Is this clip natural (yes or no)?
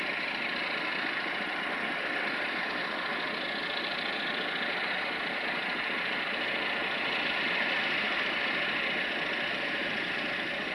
yes